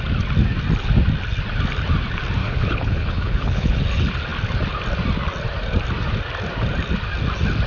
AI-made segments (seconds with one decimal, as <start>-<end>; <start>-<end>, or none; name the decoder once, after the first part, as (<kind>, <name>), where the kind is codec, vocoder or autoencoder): 2.4-3.8 (codec, HILCodec)